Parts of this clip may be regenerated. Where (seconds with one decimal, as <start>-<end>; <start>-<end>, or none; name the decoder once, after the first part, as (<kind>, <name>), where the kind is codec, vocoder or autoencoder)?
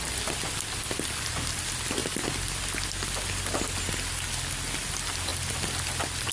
none